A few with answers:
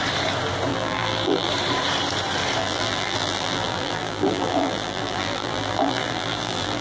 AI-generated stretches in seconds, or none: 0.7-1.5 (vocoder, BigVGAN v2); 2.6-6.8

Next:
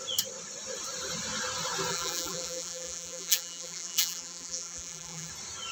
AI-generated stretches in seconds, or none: 1.9-5.3 (vocoder, BigVGAN v2)

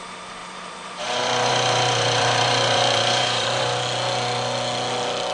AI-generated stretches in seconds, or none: 0.4-3.6 (vocoder, BigVGAN v2)

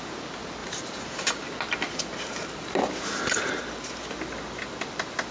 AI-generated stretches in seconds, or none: 0.6-1.3 (vocoder, BigVGAN v2)

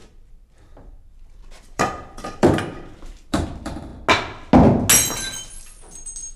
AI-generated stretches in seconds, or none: 0.0-3.9 (vocoder, BigVGAN v2)

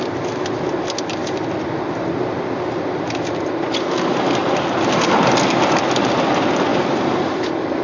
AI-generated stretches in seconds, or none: 6.7-7.8 (vocoder, BigVGAN v2)

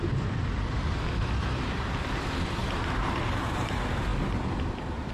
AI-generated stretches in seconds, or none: 0.0-5.1 (vocoder, BigVGAN v2)